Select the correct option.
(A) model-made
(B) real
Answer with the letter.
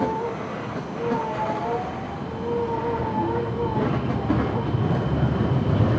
B